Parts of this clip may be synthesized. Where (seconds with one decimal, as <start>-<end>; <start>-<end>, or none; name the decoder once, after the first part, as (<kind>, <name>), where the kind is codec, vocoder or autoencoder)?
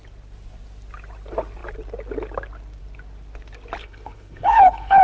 3.8-5.0 (codec, HILCodec)